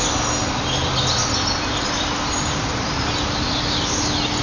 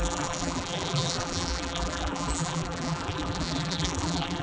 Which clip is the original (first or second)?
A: first